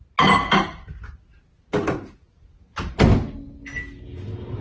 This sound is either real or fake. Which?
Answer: real